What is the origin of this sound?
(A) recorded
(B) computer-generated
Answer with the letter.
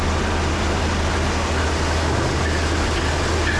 A